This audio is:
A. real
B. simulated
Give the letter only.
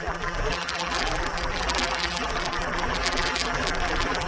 B